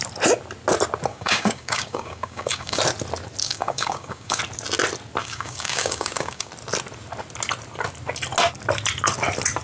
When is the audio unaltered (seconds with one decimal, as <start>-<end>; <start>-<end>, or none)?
0.0-1.1; 2.8-3.4; 4.4-5.2; 6.5-9.6